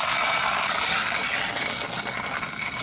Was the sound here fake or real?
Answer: real